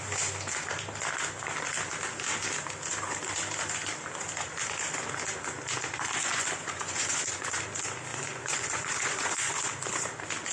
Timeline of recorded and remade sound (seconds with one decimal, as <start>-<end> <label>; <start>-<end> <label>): 0.0-6.2 recorded; 6.2-7.6 remade; 7.6-8.1 recorded; 8.1-9.7 remade; 9.7-10.5 recorded